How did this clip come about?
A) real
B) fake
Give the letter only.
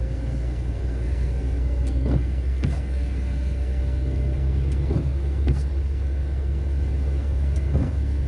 B